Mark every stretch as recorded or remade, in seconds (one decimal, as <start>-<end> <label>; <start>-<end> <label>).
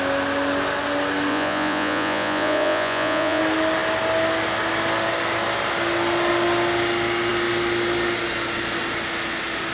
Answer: 0.0-1.3 recorded; 1.3-3.4 remade; 3.4-9.7 recorded